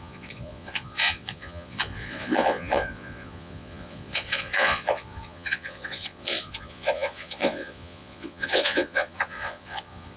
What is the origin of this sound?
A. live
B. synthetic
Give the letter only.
B